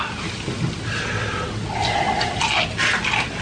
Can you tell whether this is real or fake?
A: real